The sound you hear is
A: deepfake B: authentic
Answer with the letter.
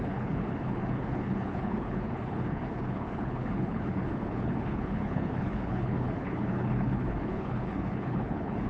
A